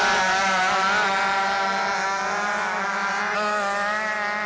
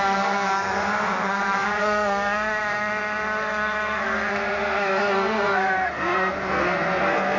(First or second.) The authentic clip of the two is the first